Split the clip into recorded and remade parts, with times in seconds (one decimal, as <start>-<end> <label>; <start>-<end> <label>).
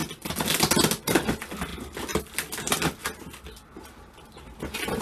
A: 0.0-1.2 remade; 1.2-1.7 recorded; 1.7-5.0 remade